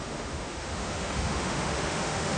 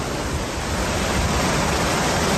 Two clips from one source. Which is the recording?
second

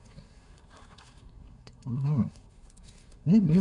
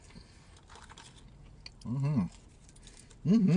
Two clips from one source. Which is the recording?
second